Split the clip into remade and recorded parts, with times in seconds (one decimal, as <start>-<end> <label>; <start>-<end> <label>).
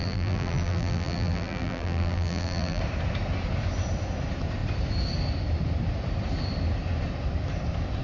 0.0-2.8 remade; 2.8-8.0 recorded